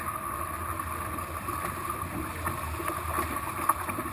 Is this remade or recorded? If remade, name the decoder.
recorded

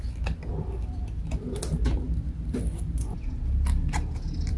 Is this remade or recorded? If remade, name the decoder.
recorded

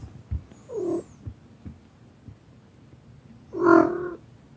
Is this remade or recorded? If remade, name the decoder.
recorded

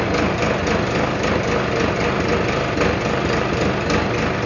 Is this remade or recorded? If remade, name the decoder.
recorded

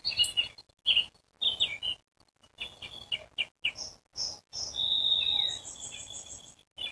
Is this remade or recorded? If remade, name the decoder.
recorded